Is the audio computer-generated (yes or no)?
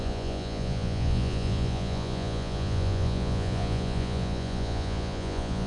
yes